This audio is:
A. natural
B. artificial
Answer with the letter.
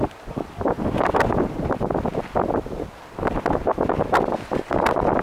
A